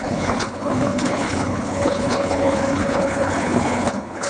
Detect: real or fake fake